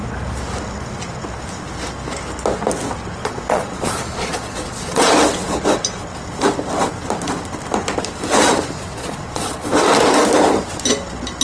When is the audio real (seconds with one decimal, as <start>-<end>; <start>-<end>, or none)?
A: 0.0-3.2; 5.1-8.8; 9.7-11.4